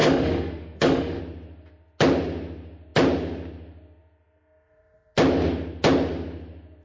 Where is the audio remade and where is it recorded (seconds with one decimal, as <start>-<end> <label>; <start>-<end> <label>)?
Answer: 0.0-1.2 remade; 1.2-6.8 recorded